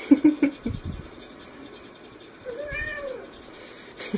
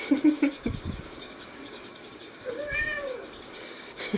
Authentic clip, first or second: first